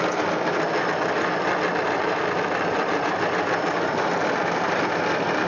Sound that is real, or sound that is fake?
real